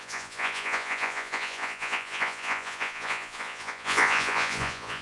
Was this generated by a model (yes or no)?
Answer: yes